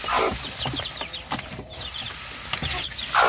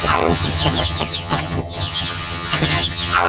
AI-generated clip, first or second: second